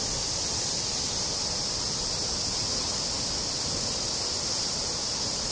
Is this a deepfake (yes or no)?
no